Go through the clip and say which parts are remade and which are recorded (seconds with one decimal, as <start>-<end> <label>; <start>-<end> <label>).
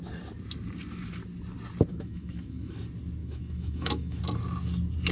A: 0.0-1.9 recorded; 1.9-2.7 remade; 2.7-3.2 recorded; 3.2-4.2 remade; 4.2-5.1 recorded